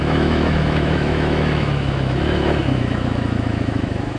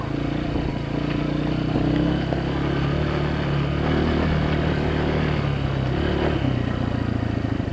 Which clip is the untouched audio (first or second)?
second